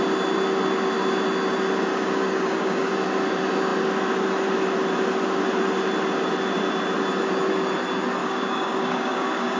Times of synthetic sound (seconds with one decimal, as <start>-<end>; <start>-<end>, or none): 1.9-2.9; 8.2-9.6